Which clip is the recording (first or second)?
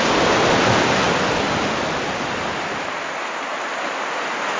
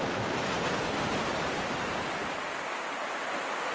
first